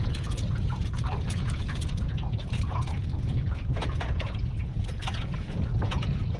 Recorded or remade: remade